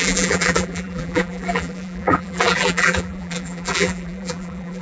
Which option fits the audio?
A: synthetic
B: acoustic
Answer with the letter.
A